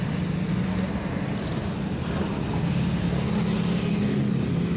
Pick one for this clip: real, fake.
real